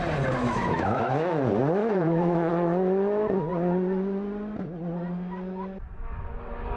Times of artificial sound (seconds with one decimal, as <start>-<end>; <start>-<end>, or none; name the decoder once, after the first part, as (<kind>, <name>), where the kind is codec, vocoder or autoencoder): 0.4-1.0 (autoencoder, DAC-VAE); 1.8-2.5